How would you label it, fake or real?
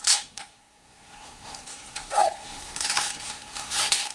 fake